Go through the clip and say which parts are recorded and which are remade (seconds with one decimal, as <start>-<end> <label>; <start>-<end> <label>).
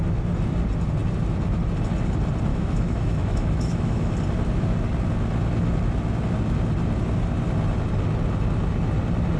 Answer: 0.0-2.5 recorded; 2.5-4.1 remade; 4.1-9.4 recorded